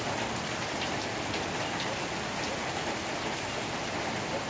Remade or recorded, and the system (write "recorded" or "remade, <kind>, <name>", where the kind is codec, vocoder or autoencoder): recorded